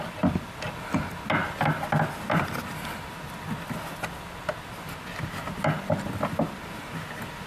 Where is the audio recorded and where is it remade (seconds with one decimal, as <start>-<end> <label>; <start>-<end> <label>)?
0.0-7.5 recorded